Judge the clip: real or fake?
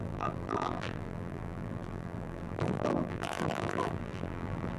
fake